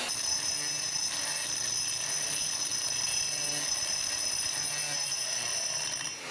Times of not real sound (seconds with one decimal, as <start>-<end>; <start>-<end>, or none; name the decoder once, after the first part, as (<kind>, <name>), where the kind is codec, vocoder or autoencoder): none

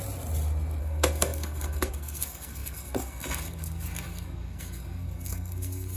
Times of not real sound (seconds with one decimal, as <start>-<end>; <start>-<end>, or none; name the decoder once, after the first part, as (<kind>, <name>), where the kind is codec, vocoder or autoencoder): 0.8-6.0 (codec, SNAC)

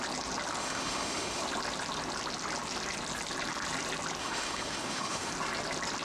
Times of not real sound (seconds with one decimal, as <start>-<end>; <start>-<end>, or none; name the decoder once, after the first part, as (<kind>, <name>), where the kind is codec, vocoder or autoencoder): 0.6-1.4 (autoencoder, DAC-VAE); 4.2-5.3

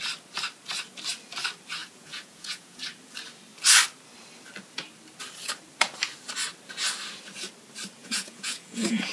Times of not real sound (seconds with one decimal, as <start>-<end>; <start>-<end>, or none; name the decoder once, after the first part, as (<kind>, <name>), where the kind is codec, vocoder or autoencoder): 1.8-2.8 (vocoder, Vocos); 8.0-9.1

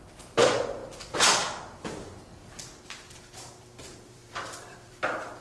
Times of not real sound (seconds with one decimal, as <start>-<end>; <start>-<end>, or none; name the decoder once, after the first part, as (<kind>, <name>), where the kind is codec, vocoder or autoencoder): 0.0-0.8 (vocoder, BigVGAN v2); 3.6-5.4

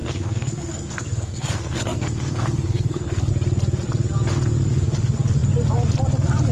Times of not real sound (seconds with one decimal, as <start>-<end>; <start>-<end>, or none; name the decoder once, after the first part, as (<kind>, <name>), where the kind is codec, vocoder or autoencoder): 0.0-3.3 (codec, SNAC)